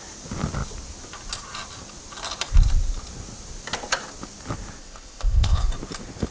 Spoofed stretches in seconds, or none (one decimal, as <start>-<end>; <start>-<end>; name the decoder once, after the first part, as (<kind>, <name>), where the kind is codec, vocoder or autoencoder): 4.8-5.6 (codec, ZipCodec)